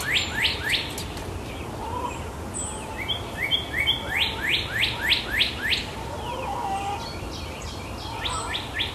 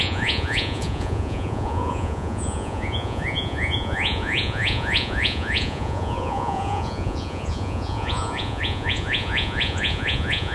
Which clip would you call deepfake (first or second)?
second